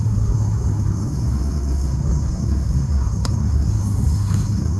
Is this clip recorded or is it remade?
remade